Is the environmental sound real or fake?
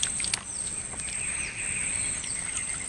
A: real